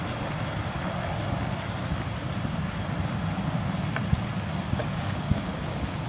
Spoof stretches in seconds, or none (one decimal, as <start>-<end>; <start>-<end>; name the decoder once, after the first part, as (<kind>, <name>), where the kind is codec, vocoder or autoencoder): 4.8-5.5 (codec, DAC)